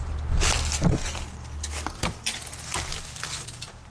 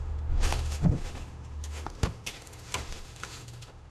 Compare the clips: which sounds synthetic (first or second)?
second